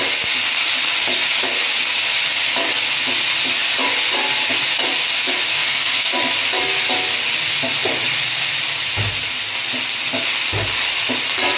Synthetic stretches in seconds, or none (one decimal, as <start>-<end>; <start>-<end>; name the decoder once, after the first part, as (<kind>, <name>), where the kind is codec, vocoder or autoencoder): 5.5-6.1 (codec, SNAC)